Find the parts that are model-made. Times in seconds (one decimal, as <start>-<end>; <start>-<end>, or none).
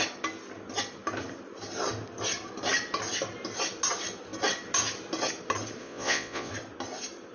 5.8-6.5